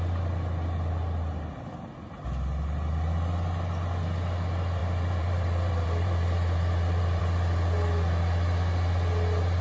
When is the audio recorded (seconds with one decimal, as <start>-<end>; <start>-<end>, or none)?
0.0-4.8; 7.2-9.6